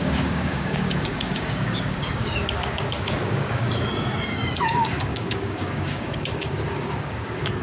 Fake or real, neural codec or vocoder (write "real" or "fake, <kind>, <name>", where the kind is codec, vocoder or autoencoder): fake, codec, DAC